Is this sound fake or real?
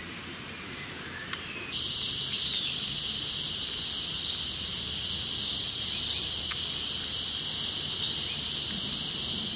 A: real